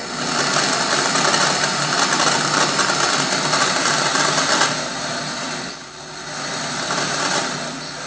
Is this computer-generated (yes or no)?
no